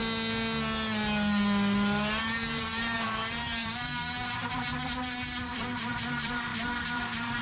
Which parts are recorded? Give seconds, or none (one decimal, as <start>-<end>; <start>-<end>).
0.0-2.2